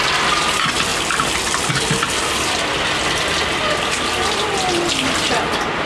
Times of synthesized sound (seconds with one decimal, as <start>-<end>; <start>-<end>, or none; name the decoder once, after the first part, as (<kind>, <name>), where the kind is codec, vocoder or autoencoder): 0.9-1.7 (vocoder, BigVGAN v2)